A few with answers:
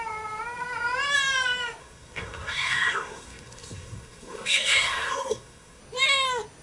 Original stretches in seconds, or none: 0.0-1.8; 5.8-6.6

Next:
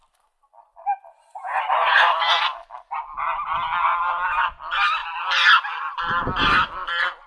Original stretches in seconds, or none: 0.0-0.7; 2.2-7.3

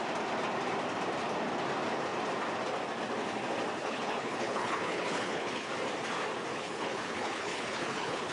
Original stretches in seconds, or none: 0.0-3.8; 5.7-6.5

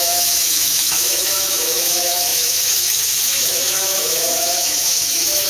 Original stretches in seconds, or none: none